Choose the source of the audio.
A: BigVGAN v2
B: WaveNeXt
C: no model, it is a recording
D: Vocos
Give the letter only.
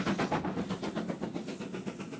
C